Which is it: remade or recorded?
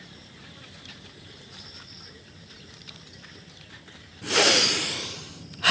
remade